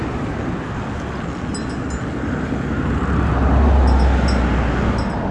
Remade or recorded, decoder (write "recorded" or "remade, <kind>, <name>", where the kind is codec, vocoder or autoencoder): recorded